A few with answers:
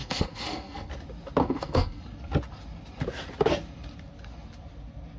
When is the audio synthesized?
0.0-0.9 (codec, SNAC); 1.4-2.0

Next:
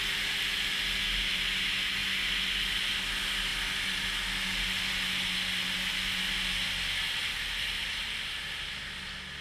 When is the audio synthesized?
none

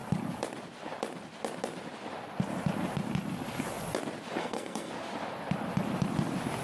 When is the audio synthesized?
4.4-4.9 (codec, SNAC)

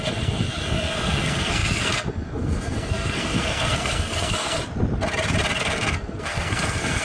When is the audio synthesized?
0.0-4.6 (codec, SNAC); 5.6-7.0

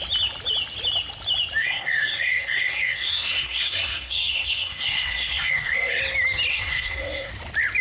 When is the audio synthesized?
1.6-6.0 (codec, SNAC); 6.5-7.3

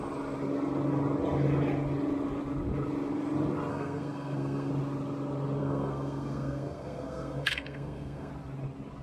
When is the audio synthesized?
3.7-4.7 (codec, SNAC); 5.6-8.3